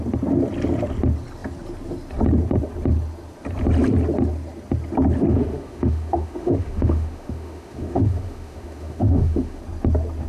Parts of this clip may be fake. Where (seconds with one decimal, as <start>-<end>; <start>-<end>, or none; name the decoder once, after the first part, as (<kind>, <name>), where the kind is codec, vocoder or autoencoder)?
5.3-9.6 (autoencoder, DAC-VAE)